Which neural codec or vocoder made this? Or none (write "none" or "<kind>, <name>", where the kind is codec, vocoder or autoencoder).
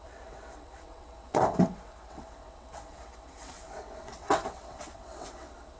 vocoder, WaveNeXt